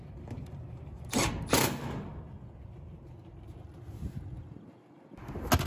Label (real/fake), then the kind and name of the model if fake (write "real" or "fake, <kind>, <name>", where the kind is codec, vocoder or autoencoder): real